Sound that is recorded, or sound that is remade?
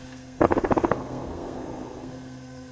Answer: remade